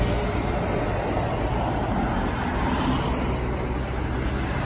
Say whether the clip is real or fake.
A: real